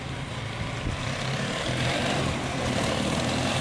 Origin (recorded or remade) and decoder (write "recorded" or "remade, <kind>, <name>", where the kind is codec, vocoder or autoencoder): remade, vocoder, BigVGAN v2